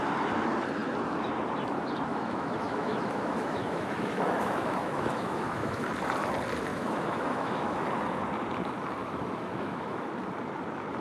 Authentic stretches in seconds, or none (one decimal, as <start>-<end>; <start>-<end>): 0.0-2.1; 5.9-6.7; 7.9-9.0; 10.1-11.0